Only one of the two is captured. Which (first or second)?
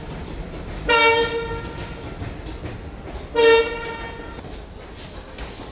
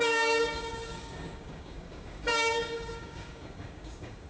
first